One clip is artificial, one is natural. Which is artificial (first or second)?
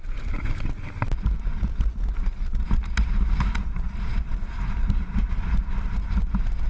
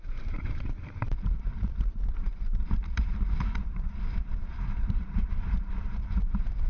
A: second